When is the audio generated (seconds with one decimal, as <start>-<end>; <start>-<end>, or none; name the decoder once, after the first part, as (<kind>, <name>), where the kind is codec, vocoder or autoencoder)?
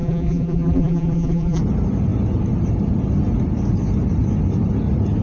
0.0-1.6 (vocoder, BigVGAN v2)